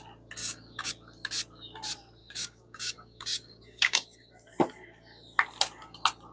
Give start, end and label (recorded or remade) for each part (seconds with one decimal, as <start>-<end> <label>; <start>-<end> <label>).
0.0-0.4 recorded; 0.4-0.9 remade; 0.9-2.2 recorded; 2.2-4.3 remade; 4.3-6.3 recorded